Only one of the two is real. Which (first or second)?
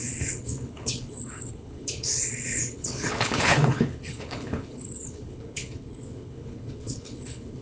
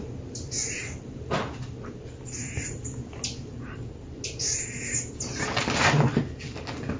second